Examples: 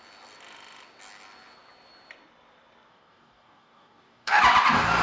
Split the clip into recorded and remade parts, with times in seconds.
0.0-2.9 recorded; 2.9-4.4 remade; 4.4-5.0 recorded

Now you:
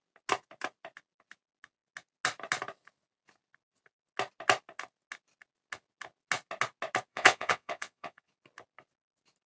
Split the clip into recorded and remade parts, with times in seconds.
0.0-7.1 recorded; 7.1-8.3 remade; 8.3-9.5 recorded

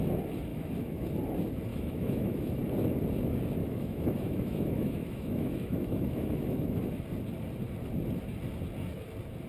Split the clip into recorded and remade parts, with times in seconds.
0.0-0.5 recorded; 0.5-1.1 remade; 1.1-1.7 recorded; 1.7-2.6 remade; 2.6-3.6 recorded; 3.6-7.0 remade; 7.0-9.5 recorded

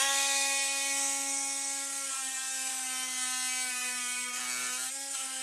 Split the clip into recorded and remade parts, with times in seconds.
0.0-2.7 remade; 2.7-3.7 recorded; 3.7-4.4 remade; 4.4-4.9 recorded; 4.9-5.4 remade

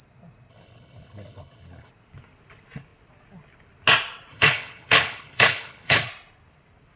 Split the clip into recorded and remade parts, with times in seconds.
0.0-0.5 recorded; 0.5-1.9 remade; 1.9-4.3 recorded; 4.3-6.1 remade; 6.1-7.0 recorded

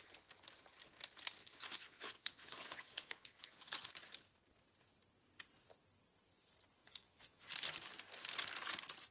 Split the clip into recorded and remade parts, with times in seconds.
0.0-1.4 recorded; 1.4-3.9 remade; 3.9-6.8 recorded; 6.8-7.5 remade; 7.5-9.1 recorded

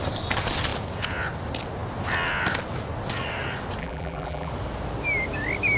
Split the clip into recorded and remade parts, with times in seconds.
0.0-3.8 recorded; 3.8-4.5 remade; 4.5-5.8 recorded

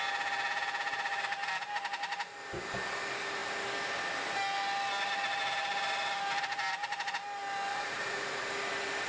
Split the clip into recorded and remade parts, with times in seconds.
0.0-7.7 recorded; 7.7-8.5 remade; 8.5-9.1 recorded